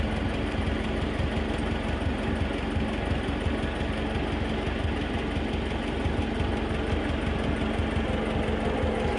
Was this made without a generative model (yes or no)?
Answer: yes